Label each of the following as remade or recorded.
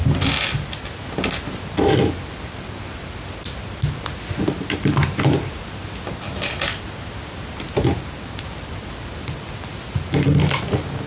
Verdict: recorded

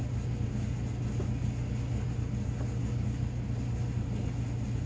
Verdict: recorded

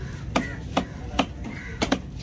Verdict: recorded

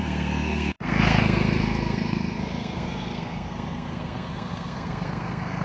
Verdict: remade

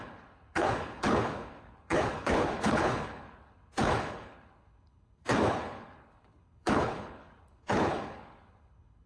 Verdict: remade